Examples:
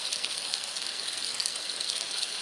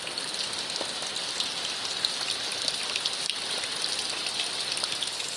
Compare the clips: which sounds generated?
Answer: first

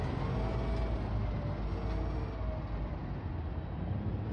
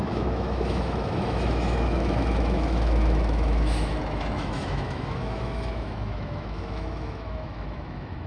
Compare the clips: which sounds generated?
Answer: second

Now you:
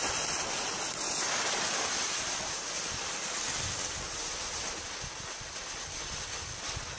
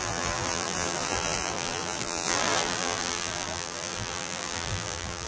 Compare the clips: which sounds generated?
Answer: second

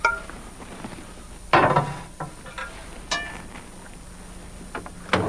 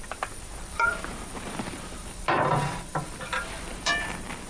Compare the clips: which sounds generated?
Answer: second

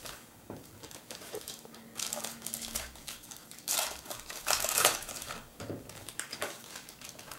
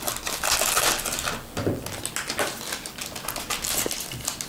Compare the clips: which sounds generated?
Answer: first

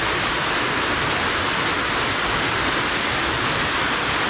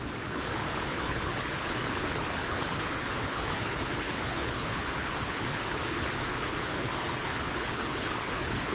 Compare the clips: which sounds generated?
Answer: second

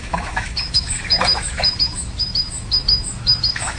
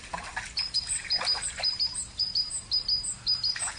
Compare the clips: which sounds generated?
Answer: first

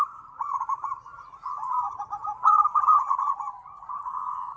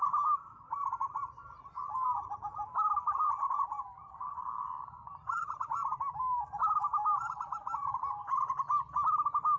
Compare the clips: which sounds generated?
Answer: first